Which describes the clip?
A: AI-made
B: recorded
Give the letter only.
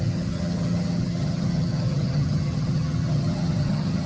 A